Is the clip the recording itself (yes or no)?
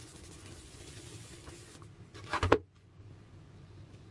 no